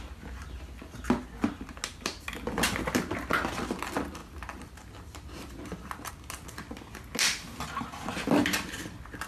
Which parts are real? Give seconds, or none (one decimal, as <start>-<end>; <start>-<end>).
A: 0.0-9.3